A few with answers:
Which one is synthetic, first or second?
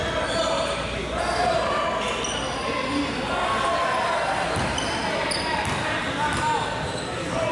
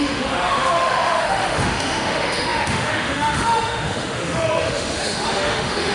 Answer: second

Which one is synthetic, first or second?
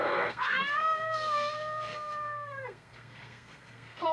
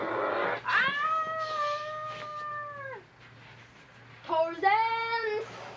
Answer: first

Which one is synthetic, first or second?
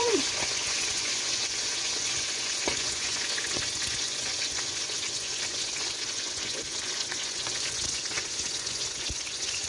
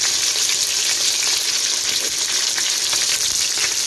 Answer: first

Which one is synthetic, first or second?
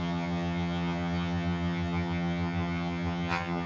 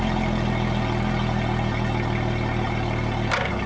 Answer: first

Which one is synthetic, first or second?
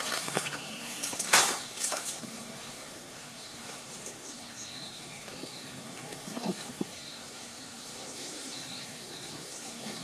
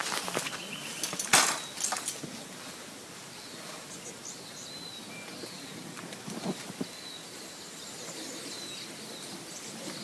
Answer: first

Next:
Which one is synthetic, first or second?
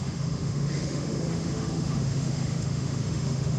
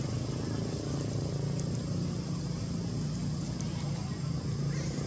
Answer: first